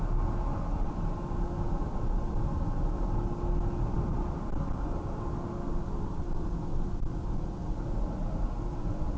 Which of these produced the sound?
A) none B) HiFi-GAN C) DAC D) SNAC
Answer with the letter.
A